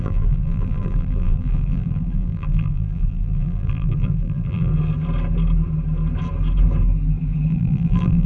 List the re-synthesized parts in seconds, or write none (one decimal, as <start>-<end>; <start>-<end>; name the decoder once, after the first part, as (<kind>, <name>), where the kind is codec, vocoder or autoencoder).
0.0-4.7 (vocoder, BigVGAN v2); 7.5-8.3